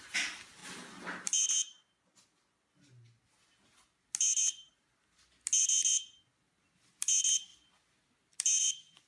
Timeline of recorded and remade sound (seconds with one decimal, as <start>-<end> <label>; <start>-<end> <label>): 0.0-9.1 recorded